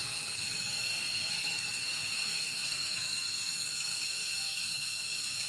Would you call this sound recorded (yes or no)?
no